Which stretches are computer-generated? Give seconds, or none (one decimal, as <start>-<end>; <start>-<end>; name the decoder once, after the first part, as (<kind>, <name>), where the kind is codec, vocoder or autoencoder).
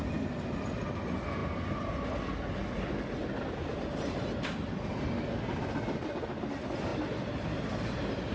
none